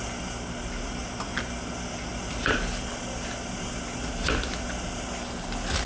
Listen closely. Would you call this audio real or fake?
real